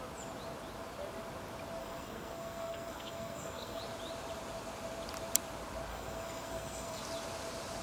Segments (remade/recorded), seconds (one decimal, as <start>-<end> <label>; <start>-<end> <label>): 0.0-1.8 recorded; 1.8-3.8 remade; 3.8-5.9 recorded; 5.9-7.0 remade; 7.0-7.8 recorded